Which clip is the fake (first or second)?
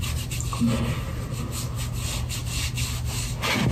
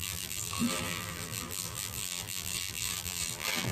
second